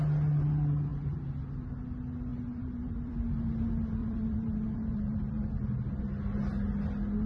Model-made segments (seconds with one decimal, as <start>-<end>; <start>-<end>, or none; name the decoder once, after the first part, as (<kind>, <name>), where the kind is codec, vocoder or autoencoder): 2.3-3.1 (vocoder, BigVGAN v2); 4.0-5.5